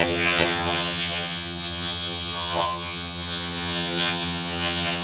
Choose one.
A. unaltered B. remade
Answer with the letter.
B